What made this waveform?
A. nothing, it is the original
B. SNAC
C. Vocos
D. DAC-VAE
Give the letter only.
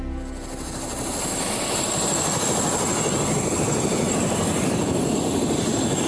A